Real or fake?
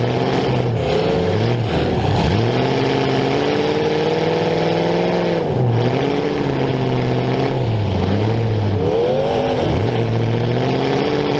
real